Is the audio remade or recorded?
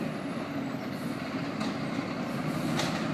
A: recorded